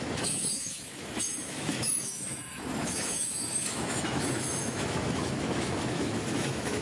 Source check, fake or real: fake